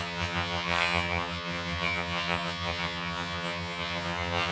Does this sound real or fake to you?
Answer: fake